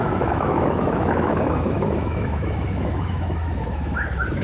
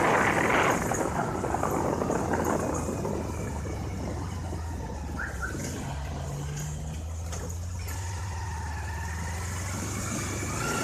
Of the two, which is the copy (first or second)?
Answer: first